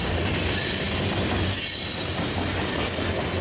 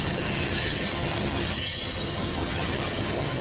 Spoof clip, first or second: second